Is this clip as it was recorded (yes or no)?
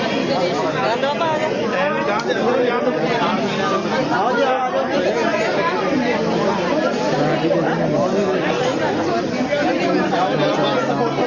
yes